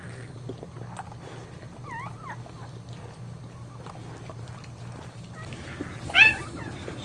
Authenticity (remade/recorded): recorded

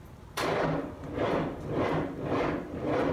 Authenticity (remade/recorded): recorded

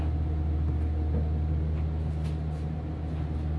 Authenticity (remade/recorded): recorded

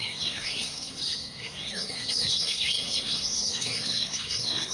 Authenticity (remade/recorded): remade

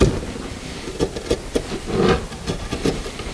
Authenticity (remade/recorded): recorded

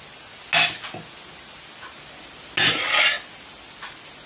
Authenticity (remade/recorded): recorded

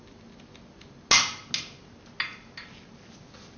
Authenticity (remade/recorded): recorded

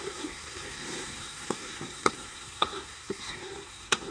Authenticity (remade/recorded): remade